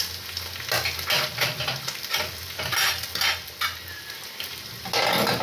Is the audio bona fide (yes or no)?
yes